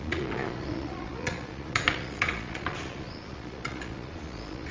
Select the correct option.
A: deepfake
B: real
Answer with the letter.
A